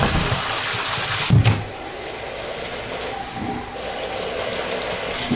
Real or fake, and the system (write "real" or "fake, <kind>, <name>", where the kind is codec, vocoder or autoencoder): real